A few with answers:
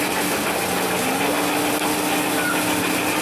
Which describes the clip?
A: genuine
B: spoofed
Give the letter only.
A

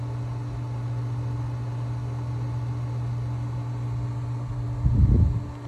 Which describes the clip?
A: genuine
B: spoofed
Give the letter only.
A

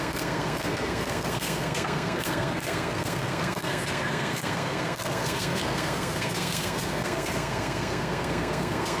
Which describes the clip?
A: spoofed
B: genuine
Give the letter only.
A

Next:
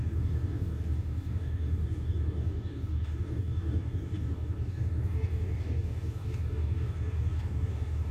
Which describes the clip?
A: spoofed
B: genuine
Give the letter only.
A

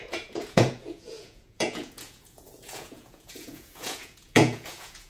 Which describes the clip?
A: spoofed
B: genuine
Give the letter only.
A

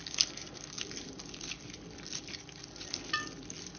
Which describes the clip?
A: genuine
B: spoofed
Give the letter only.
B